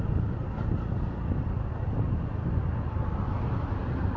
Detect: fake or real real